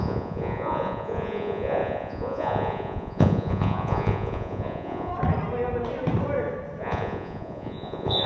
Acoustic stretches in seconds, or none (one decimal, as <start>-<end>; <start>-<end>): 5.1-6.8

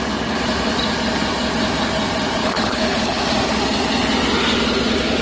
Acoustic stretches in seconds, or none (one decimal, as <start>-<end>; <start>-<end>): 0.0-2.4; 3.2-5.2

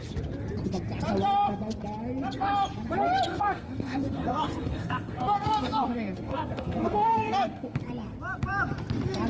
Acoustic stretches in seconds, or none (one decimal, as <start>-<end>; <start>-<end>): 0.0-3.3; 7.8-9.3

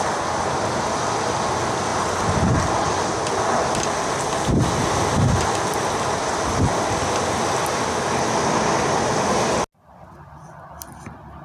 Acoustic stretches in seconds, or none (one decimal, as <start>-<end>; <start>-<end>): 0.0-11.4

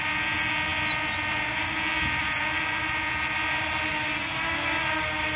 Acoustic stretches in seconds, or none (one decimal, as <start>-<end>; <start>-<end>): 0.0-5.4

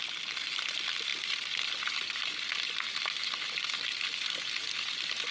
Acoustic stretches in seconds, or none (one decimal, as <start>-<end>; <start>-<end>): 0.0-5.3

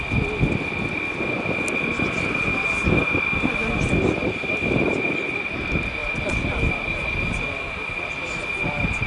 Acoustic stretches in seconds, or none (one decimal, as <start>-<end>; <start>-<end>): 0.0-9.1